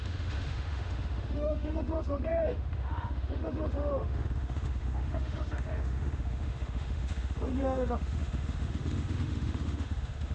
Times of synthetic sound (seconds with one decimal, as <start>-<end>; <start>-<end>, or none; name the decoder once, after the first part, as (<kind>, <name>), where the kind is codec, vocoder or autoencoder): 0.0-10.3 (autoencoder, DAC-VAE)